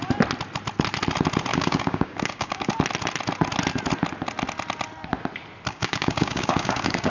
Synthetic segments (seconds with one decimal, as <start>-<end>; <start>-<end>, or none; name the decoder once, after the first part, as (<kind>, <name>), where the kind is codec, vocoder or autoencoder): 1.5-2.7 (codec, DAC); 5.7-7.1